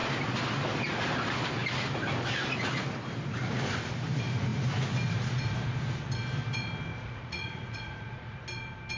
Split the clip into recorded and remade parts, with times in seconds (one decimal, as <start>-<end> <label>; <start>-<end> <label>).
0.0-6.9 recorded; 6.9-8.4 remade; 8.4-9.0 recorded